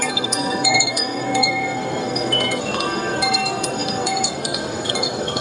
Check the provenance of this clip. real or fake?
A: fake